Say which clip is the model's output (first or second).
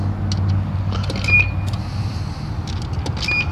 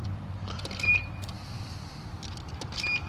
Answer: second